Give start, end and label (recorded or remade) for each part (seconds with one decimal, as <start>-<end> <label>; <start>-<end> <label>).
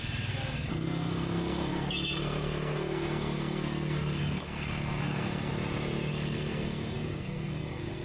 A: 0.0-5.5 remade; 5.5-6.1 recorded; 6.1-8.0 remade